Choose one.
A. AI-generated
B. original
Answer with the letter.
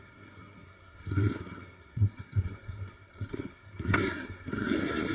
A